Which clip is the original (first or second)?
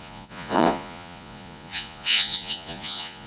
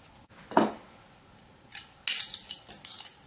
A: second